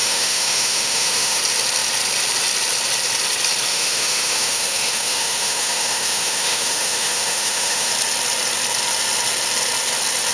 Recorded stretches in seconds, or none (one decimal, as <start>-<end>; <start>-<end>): 1.4-3.7; 7.9-10.3